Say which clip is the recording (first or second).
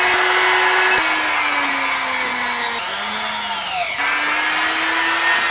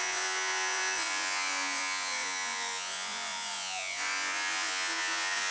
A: first